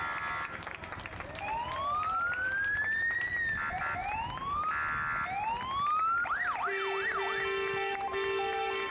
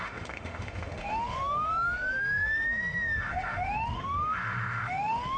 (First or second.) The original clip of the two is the first